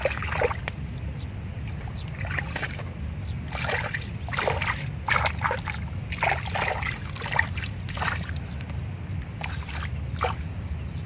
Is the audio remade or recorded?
recorded